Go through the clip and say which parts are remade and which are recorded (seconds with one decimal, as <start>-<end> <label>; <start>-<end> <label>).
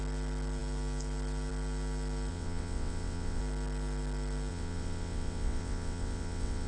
0.0-2.3 recorded; 2.3-3.4 remade; 3.4-4.5 recorded; 4.5-6.7 remade